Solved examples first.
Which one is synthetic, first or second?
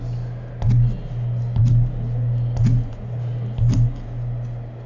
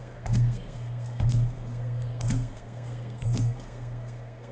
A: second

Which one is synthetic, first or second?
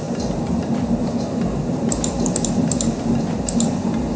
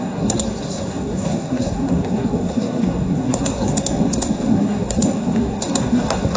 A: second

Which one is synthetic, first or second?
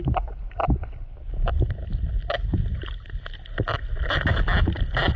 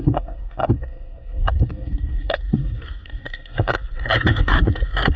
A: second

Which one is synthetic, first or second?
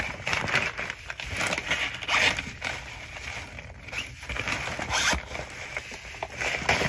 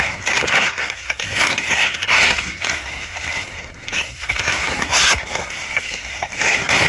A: second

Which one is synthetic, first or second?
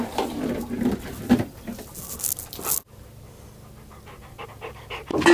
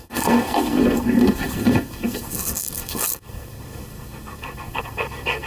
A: second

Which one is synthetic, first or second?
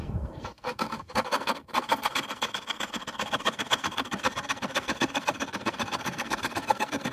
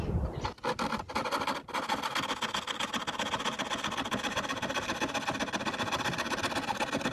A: first